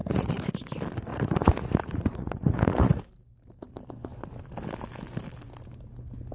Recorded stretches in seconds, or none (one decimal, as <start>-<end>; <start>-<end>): 0.5-1.1; 3.0-6.3

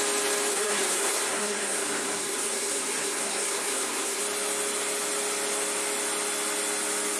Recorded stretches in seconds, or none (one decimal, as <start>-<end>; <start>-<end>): 0.0-0.5; 4.2-7.2

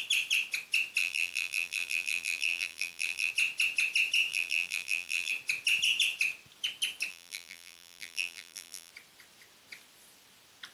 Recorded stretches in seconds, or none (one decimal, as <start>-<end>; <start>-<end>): 0.0-1.0; 3.3-4.3; 5.3-7.1; 8.9-10.7

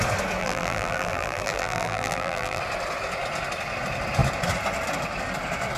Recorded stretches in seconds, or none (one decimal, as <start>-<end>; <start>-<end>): 0.0-0.4; 2.6-5.8